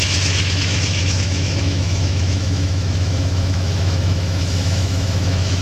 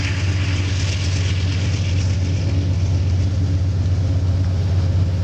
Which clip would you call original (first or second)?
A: second